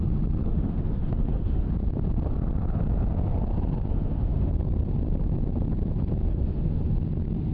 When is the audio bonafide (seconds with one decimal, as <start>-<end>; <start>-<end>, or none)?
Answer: 0.0-0.4; 1.7-3.9; 4.5-6.3; 6.9-7.5